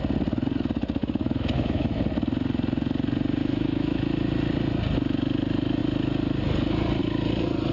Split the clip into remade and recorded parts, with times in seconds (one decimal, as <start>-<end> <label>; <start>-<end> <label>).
0.0-1.0 recorded; 1.0-2.0 remade; 2.0-3.4 recorded; 3.4-4.0 remade; 4.0-7.7 recorded